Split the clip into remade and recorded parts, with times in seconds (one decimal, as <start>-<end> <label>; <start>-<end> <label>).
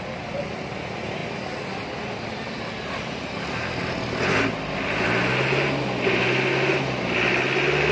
0.0-7.9 recorded